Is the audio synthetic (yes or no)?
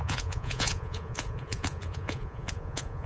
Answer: yes